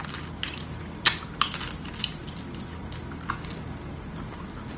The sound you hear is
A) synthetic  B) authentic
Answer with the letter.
B